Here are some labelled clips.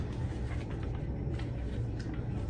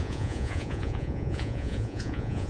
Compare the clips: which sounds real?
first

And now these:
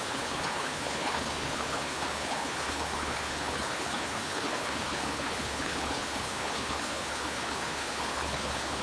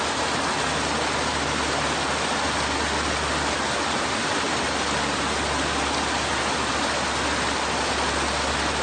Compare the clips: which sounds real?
second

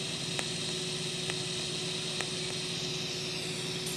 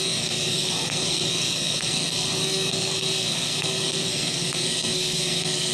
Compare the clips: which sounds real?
first